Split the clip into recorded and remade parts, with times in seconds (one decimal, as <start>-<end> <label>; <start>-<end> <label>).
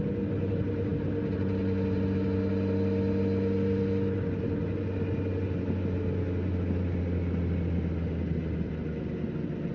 0.0-9.7 recorded